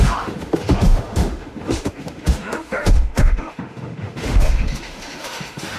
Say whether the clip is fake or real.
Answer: fake